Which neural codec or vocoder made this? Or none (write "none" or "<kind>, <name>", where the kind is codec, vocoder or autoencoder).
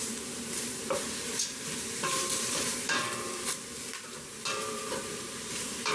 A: vocoder, BigVGAN v2